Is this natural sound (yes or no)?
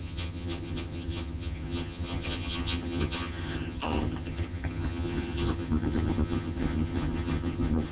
no